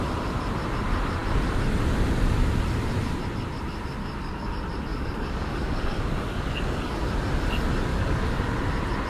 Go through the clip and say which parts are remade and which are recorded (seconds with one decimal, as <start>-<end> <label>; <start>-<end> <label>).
0.0-4.0 recorded; 4.0-4.5 remade; 4.5-4.9 recorded; 4.9-7.1 remade; 7.1-7.9 recorded; 7.9-8.4 remade; 8.4-9.1 recorded